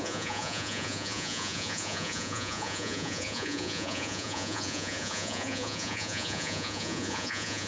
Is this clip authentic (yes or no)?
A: no